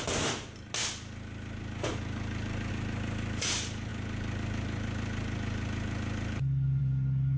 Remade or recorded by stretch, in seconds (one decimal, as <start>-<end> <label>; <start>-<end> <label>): 0.0-7.4 recorded